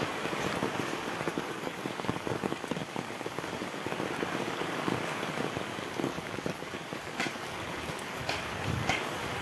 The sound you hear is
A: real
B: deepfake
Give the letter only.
B